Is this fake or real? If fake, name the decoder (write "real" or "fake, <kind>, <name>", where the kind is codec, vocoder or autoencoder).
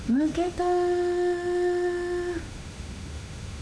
fake, autoencoder, DAC-VAE